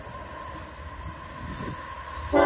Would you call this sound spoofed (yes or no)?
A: no